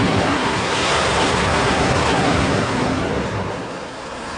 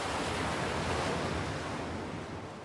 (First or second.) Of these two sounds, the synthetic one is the first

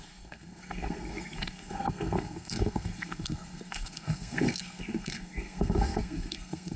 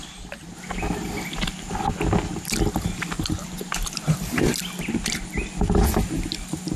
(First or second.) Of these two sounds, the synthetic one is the first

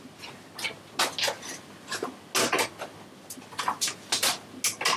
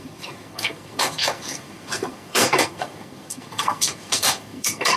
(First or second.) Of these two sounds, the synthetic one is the second